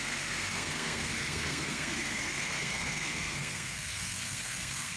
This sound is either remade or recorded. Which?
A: remade